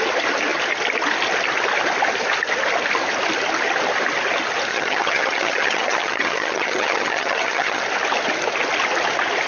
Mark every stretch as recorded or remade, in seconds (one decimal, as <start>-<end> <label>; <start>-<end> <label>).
0.0-4.7 recorded; 4.7-7.8 remade; 7.8-9.5 recorded